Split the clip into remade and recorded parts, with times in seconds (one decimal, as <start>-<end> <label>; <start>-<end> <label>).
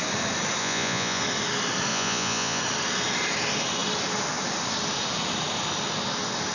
0.0-0.6 recorded; 0.6-1.2 remade; 1.2-1.9 recorded; 1.9-2.6 remade; 2.6-6.5 recorded